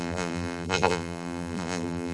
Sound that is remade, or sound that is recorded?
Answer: remade